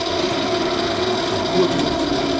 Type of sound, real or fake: real